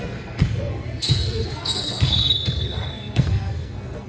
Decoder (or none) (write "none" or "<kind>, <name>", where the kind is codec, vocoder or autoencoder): codec, SNAC